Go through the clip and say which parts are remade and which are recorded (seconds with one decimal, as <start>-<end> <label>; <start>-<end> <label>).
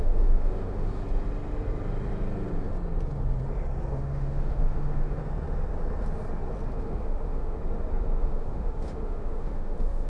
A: 0.0-0.9 remade; 0.9-3.9 recorded; 3.9-5.2 remade; 5.2-6.8 recorded; 6.8-7.6 remade; 7.6-8.2 recorded; 8.2-10.1 remade